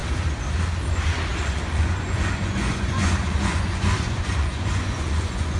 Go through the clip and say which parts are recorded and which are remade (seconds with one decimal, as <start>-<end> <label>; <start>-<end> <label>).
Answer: 0.0-0.9 recorded; 0.9-5.6 remade